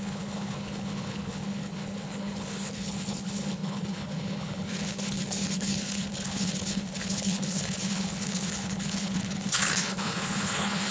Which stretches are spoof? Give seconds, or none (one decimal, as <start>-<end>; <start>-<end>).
0.0-10.9